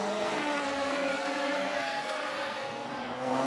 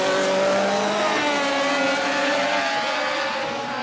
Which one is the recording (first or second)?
second